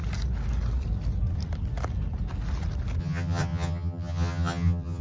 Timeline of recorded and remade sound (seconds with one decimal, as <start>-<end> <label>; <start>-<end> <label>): 0.0-3.0 recorded; 3.0-5.0 remade